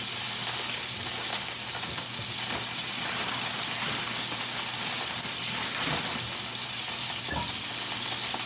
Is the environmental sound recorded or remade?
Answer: recorded